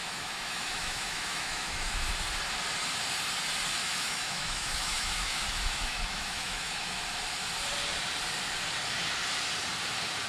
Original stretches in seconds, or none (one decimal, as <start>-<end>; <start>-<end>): 2.1-3.8; 7.0-10.3